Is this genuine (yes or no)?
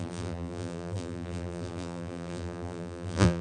no